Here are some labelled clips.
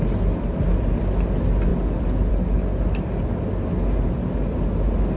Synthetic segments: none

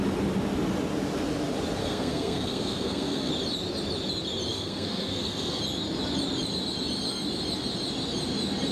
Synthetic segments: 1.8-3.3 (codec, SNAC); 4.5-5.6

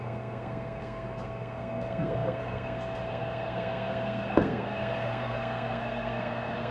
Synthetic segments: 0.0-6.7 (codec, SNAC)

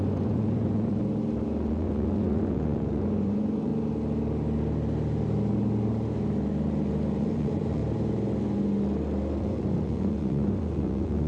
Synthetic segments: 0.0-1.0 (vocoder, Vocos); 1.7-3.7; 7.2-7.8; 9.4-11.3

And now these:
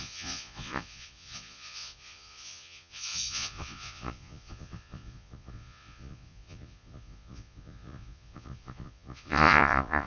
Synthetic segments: 0.0-10.1 (vocoder, Vocos)

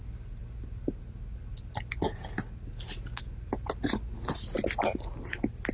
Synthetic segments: none